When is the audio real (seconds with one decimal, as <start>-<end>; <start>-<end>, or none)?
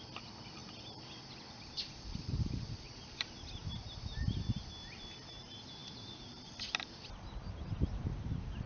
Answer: 0.0-8.7